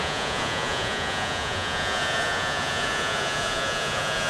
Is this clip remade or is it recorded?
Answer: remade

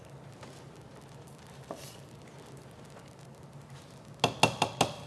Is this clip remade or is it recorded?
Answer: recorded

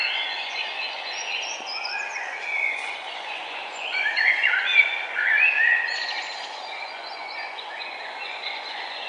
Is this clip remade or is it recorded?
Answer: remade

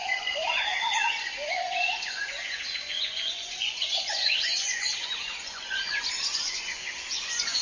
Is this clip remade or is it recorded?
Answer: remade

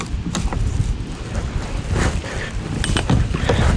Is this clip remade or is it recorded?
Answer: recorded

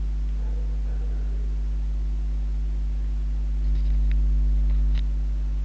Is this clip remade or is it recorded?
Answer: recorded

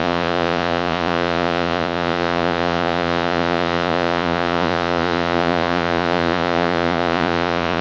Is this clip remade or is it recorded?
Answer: remade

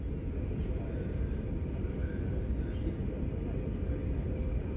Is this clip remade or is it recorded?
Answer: recorded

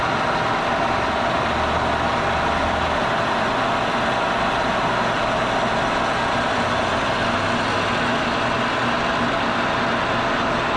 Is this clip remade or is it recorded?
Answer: recorded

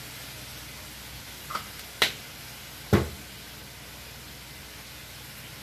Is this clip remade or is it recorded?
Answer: recorded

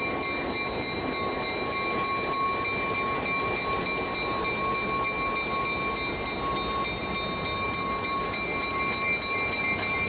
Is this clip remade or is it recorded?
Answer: recorded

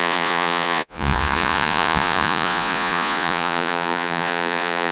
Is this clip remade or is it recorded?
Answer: remade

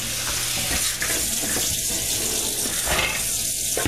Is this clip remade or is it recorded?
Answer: recorded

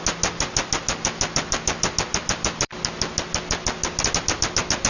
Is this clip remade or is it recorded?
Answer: recorded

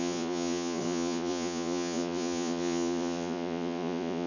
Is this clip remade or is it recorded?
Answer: remade